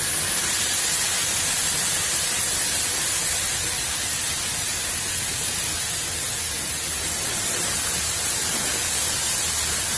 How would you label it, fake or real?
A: real